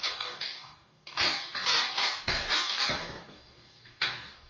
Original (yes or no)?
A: no